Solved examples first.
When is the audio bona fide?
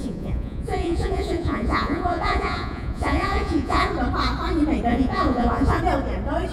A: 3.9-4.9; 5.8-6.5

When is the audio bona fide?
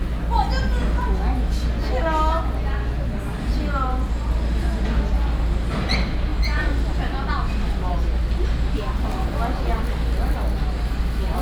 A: 0.0-11.4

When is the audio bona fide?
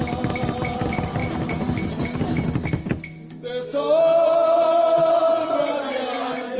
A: 0.0-6.6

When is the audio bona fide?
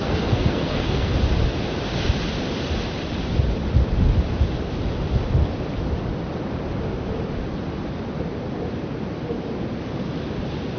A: 1.1-10.8